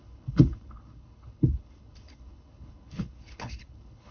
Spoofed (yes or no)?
yes